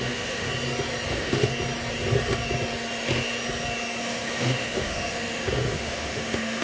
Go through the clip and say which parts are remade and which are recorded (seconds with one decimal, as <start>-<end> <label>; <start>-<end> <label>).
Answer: 0.0-0.5 remade; 0.5-1.1 recorded; 1.1-1.5 remade; 1.5-4.0 recorded; 4.0-6.6 remade